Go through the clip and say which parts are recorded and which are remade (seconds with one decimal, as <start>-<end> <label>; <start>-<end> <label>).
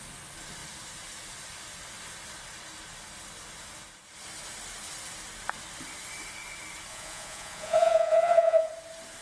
0.0-6.9 recorded; 6.9-8.7 remade; 8.7-9.2 recorded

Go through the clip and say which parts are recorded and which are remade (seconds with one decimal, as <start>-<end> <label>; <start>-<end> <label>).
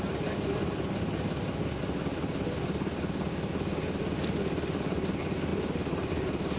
0.0-6.6 recorded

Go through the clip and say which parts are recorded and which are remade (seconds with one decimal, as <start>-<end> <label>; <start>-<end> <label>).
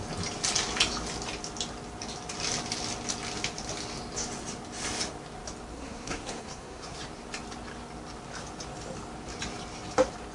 0.0-5.7 recorded; 5.7-7.0 remade; 7.0-10.3 recorded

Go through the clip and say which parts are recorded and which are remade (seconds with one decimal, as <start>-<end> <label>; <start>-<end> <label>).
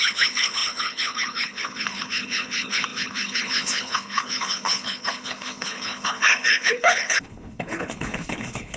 0.0-8.8 remade